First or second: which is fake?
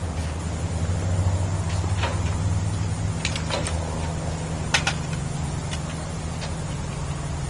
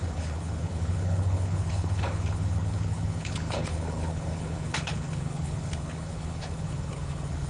second